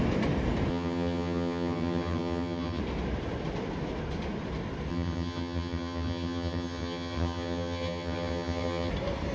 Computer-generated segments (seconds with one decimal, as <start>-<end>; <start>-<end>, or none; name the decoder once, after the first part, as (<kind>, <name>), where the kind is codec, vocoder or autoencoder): 0.7-2.8 (vocoder, HiFi-GAN); 4.9-8.9